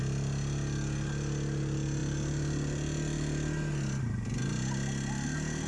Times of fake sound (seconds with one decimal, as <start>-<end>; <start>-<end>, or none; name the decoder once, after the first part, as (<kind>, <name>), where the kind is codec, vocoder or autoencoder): none